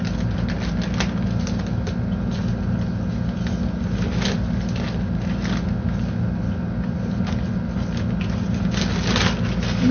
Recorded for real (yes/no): yes